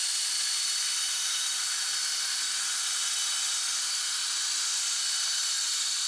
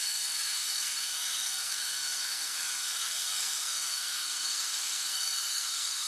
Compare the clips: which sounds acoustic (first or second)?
first